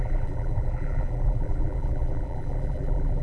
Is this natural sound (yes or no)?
no